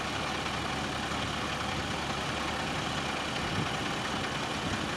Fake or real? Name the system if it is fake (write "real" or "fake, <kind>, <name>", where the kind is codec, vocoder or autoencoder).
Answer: real